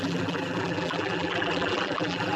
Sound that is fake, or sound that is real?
fake